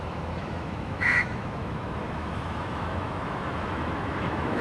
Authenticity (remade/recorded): remade